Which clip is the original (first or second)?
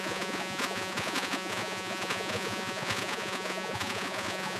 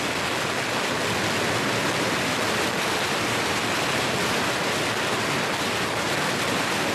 second